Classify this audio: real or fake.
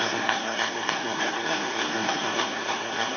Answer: fake